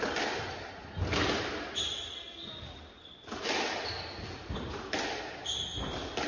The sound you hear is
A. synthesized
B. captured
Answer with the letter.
B